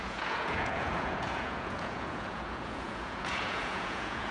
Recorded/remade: remade